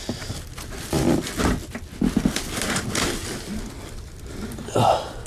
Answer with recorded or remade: remade